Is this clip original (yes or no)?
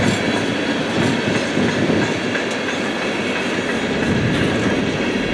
yes